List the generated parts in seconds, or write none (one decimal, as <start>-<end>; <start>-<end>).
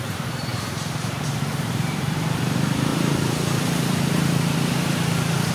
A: 0.0-5.5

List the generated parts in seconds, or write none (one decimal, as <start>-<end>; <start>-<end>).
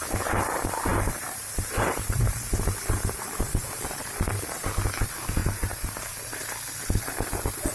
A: 0.9-4.5; 5.4-6.4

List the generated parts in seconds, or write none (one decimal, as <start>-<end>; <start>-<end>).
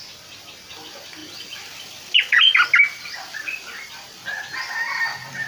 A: none